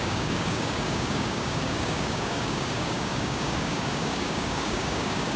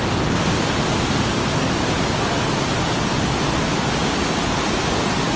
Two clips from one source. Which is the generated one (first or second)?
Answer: first